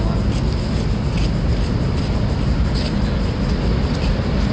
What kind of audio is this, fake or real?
real